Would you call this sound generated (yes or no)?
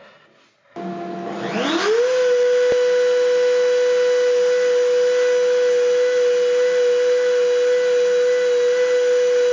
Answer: no